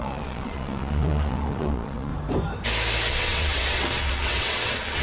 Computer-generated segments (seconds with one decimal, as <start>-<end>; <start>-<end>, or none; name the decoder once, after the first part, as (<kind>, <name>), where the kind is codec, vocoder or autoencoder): 0.0-2.1 (vocoder, WaveNeXt); 3.1-5.0